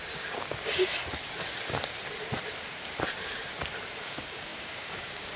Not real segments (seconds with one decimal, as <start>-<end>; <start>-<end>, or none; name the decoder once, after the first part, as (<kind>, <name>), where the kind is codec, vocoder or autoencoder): 0.0-0.8 (codec, DAC); 4.0-5.4